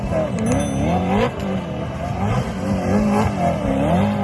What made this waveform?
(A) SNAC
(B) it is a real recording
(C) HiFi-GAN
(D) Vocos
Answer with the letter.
B